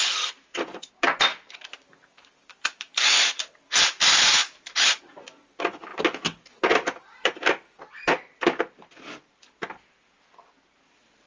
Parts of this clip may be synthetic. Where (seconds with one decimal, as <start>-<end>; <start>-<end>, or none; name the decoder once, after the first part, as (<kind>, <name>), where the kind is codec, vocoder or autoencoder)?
1.3-3.5 (vocoder, BigVGAN v2); 4.4-5.0